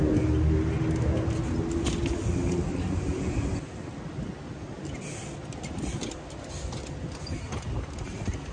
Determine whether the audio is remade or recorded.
recorded